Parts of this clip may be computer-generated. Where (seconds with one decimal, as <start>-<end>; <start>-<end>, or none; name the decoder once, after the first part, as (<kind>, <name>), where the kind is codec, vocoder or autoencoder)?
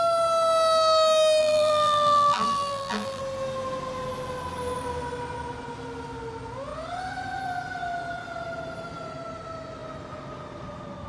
1.4-3.2 (vocoder, BigVGAN v2)